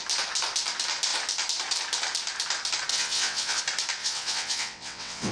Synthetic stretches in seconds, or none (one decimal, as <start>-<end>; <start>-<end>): 2.9-3.6; 4.0-5.3